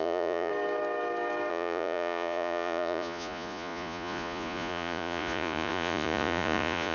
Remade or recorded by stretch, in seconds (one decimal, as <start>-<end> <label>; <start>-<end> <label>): 0.0-0.5 remade; 0.5-1.5 recorded; 1.5-6.9 remade